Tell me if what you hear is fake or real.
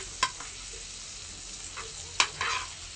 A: real